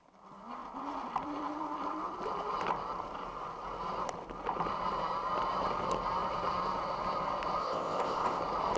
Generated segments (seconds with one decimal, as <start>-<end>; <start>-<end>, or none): 7.6-8.4